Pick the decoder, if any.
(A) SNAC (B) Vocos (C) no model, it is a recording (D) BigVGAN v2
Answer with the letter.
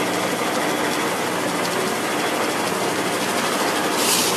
C